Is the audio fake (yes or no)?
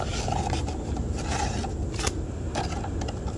no